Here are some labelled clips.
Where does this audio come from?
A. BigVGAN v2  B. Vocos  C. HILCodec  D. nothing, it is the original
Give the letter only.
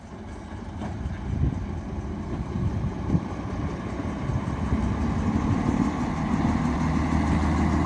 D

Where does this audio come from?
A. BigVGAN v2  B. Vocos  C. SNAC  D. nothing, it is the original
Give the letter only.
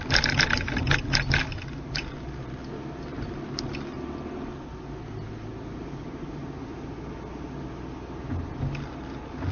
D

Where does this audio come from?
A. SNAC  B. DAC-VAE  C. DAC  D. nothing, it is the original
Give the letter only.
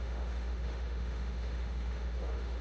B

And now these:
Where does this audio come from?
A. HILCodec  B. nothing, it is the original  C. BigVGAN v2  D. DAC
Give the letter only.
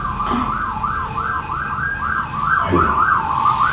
B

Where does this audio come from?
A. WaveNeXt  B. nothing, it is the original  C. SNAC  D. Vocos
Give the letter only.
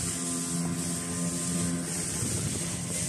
B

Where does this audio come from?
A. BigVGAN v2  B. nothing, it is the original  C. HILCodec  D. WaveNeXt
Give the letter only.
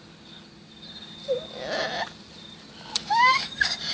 B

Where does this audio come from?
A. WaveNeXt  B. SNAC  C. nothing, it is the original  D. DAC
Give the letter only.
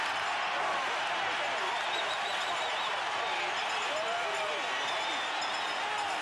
C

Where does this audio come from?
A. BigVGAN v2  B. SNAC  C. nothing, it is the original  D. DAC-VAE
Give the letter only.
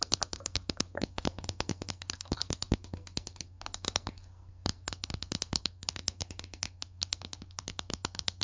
B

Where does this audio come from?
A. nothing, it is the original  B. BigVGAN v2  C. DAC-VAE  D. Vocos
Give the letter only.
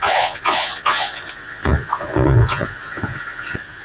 D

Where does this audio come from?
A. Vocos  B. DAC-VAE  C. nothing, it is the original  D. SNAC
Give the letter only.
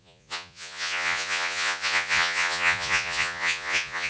A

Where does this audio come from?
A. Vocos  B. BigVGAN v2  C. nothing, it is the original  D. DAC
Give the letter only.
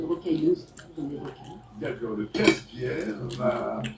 C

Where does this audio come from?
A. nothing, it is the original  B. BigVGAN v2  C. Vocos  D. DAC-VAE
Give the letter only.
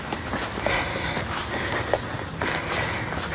A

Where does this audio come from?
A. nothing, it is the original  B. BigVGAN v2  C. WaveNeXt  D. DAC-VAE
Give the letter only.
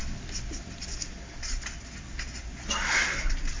A